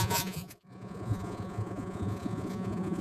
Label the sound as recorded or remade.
remade